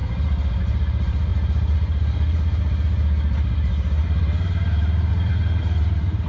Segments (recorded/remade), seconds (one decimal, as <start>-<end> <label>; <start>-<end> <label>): 0.0-6.3 recorded